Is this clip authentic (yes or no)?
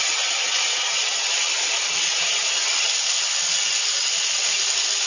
yes